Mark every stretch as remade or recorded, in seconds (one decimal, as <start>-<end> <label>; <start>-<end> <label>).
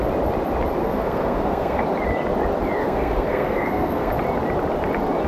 0.0-0.8 recorded; 0.8-1.8 remade; 1.8-2.8 recorded; 2.8-4.1 remade; 4.1-5.3 recorded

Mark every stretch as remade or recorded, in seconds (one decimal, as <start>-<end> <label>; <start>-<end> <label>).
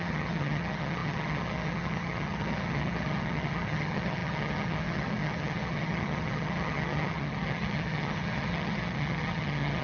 0.0-9.8 remade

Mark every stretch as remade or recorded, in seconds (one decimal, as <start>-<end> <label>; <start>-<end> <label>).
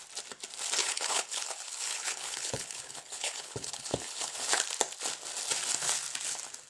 0.0-0.8 recorded; 0.8-4.6 remade; 4.6-6.7 recorded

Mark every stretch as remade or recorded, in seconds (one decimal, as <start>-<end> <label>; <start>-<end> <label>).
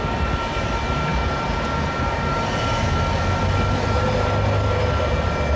0.0-5.6 recorded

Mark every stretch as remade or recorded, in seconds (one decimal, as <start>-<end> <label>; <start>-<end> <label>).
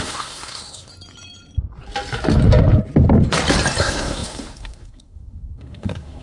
0.0-0.9 remade; 0.9-3.8 recorded; 3.8-6.2 remade